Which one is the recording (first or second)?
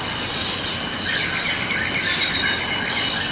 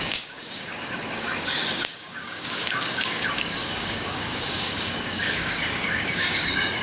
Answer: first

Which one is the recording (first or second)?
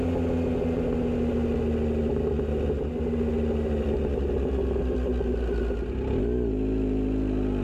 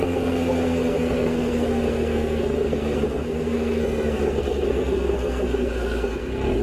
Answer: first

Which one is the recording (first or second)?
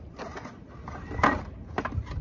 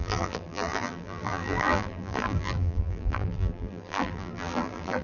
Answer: first